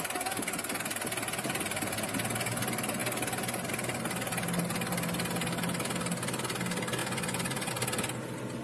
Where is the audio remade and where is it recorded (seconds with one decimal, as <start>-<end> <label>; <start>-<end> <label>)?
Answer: 0.0-7.0 recorded; 7.0-7.7 remade; 7.7-8.6 recorded